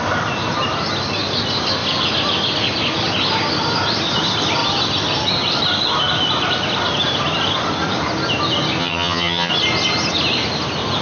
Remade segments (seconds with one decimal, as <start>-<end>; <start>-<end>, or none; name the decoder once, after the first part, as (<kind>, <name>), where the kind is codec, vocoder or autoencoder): 8.8-9.5 (vocoder, HiFi-GAN)